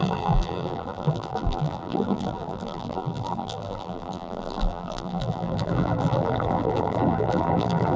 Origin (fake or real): fake